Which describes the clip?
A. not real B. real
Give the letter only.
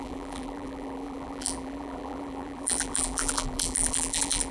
A